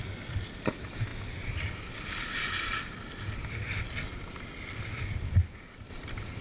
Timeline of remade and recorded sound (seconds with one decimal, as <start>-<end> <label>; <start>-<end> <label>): 0.0-6.4 recorded